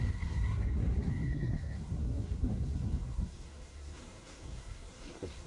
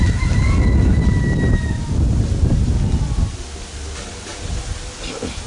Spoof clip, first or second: first